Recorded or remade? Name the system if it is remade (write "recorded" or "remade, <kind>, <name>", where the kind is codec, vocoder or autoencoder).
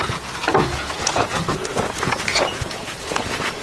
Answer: remade, vocoder, Vocos